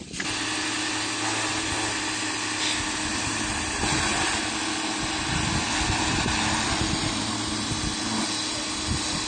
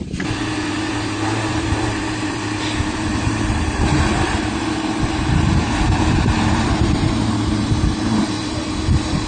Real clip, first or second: first